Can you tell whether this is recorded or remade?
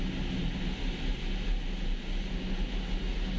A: recorded